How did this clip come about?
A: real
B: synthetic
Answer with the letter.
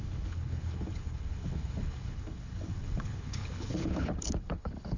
B